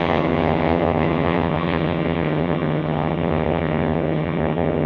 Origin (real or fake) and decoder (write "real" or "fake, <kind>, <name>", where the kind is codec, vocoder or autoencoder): fake, vocoder, HiFi-GAN